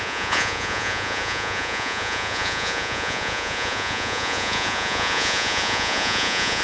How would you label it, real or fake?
fake